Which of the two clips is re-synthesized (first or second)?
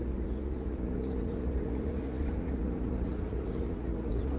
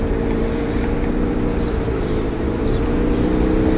first